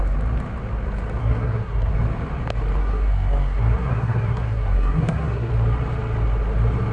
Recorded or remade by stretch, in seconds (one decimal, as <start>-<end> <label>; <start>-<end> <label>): 0.0-1.2 recorded; 1.2-1.9 remade; 1.9-2.8 recorded; 2.8-5.5 remade; 5.5-6.9 recorded